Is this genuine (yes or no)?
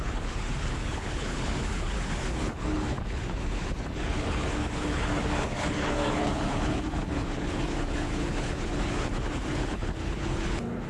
no